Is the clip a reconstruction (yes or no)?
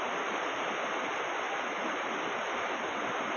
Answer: no